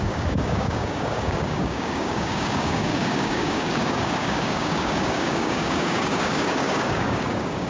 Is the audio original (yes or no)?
no